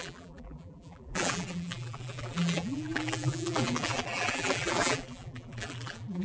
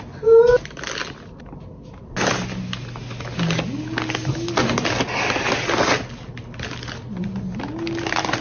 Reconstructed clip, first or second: first